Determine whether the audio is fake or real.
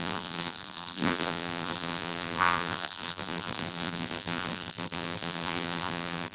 fake